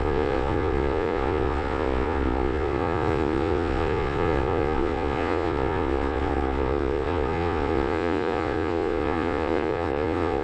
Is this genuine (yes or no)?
no